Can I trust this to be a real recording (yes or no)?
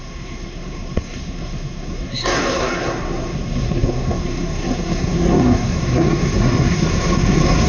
no